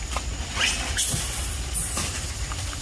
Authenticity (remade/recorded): recorded